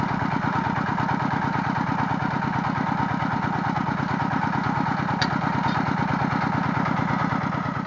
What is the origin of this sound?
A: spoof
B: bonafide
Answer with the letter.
B